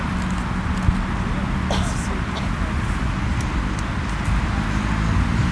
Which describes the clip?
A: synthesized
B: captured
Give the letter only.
B